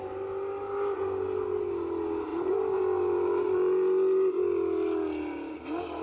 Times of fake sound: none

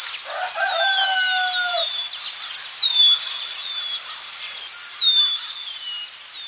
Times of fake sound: none

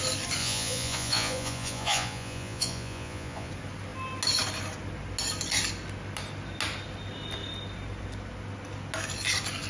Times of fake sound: 0.4-3.5

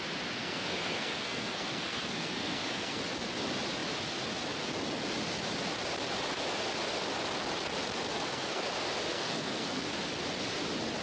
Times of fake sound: 0.4-3.0; 8.1-8.6; 9.1-9.8

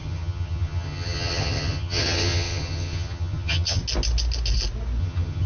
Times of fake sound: 0.0-3.8; 5.0-5.5

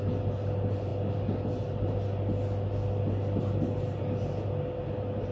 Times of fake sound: none